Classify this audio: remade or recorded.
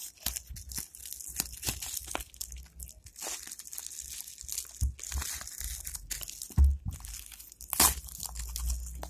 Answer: recorded